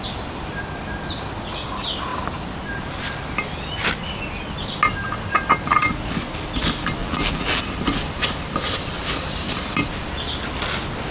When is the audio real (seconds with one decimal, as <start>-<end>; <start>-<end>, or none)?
0.0-7.0; 7.6-11.1